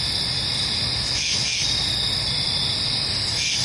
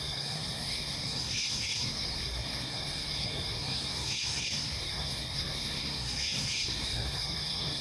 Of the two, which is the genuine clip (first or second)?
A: first